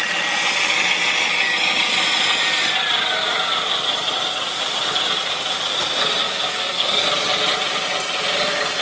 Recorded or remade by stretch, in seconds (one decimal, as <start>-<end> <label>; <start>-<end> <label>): 0.0-6.2 recorded; 6.2-7.0 remade; 7.0-8.8 recorded